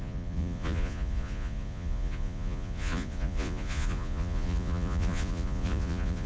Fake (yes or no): yes